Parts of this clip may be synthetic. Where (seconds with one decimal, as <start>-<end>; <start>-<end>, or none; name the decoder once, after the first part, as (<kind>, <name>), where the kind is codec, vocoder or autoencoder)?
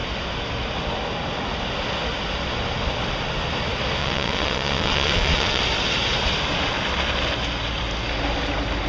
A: 4.0-5.6 (vocoder, WaveNeXt)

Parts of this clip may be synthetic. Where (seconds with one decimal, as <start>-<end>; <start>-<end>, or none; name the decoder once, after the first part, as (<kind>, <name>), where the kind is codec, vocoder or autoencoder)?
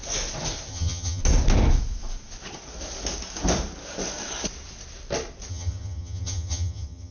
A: 0.7-1.2 (vocoder, HiFi-GAN); 5.5-7.1